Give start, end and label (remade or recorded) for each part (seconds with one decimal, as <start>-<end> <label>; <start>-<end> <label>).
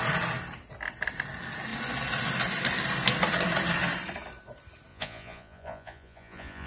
0.0-4.9 recorded; 4.9-6.7 remade